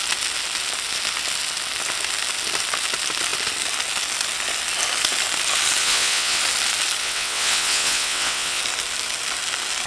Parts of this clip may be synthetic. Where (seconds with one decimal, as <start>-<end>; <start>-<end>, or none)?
5.8-6.4; 7.0-8.6